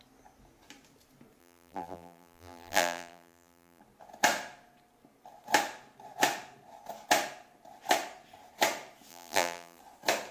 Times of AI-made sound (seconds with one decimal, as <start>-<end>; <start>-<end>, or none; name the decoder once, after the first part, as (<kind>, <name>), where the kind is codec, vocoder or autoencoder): 1.4-3.8 (vocoder, BigVGAN v2); 9.1-9.8